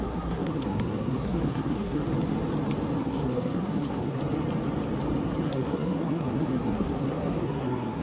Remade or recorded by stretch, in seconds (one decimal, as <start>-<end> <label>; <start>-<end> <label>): 0.0-2.0 remade; 2.0-3.0 recorded; 3.0-4.2 remade; 4.2-5.4 recorded; 5.4-8.0 remade